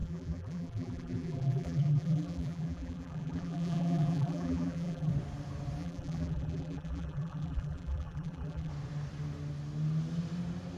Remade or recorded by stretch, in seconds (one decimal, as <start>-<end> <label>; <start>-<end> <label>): 0.0-5.1 remade; 5.1-5.8 recorded; 5.8-8.7 remade; 8.7-10.8 recorded